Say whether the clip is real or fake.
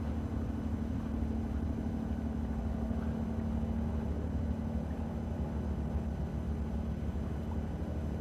real